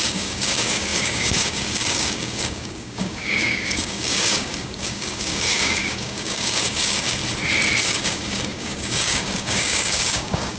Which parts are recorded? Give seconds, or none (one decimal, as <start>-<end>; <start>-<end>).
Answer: 7.2-7.8